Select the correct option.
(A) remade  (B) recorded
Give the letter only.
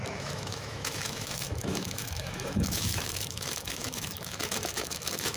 A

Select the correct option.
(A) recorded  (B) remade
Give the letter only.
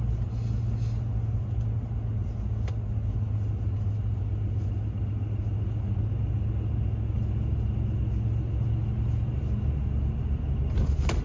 A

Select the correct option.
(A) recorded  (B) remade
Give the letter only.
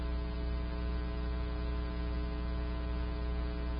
A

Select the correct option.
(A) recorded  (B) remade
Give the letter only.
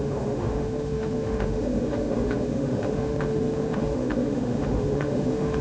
B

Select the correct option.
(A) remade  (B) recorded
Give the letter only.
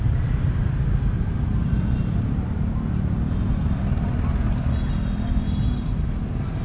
B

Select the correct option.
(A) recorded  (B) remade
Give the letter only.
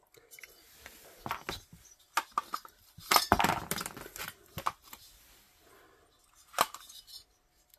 A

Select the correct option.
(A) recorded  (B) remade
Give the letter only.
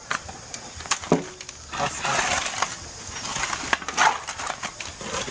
A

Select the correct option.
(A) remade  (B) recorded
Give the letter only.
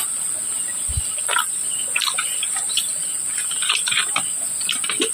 B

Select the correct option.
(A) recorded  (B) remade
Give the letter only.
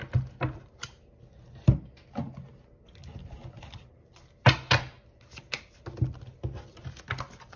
A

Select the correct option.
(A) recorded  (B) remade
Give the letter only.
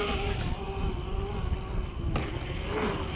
A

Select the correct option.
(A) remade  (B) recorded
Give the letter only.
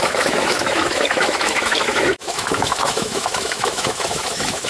A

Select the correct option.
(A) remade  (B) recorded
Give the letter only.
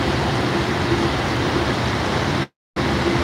B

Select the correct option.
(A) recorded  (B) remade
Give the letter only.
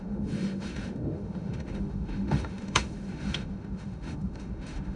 B